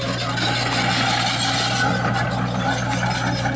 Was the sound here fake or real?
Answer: real